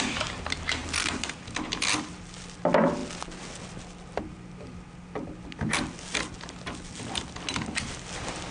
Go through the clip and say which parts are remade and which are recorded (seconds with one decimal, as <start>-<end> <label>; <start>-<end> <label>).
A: 0.0-0.8 recorded; 0.8-1.4 remade; 1.4-8.5 recorded